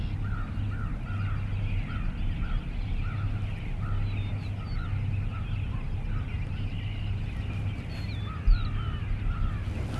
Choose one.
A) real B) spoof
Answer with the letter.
A